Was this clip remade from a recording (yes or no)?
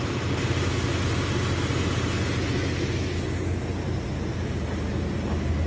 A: no